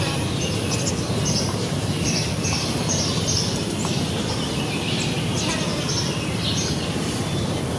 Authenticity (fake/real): real